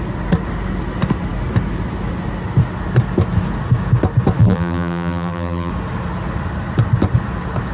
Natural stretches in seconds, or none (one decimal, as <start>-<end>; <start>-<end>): 0.0-4.4; 5.7-7.7